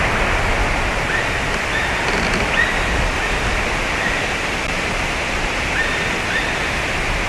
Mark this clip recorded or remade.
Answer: recorded